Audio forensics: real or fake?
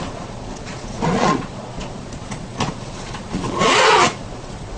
fake